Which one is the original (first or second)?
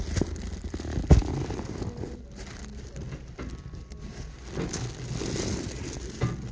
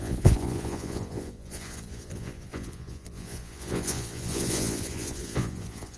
first